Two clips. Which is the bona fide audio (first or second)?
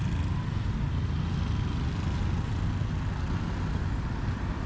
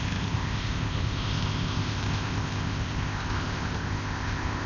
first